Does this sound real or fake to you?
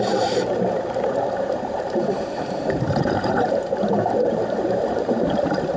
fake